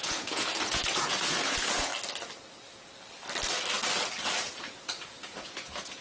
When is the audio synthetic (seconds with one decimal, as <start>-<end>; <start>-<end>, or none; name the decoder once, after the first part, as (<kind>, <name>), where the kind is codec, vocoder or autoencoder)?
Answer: 0.0-1.9 (vocoder, Vocos); 4.6-6.0